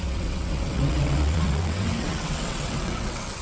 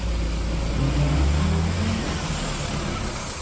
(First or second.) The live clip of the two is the second